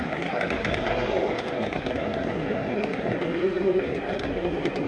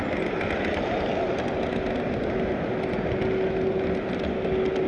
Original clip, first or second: second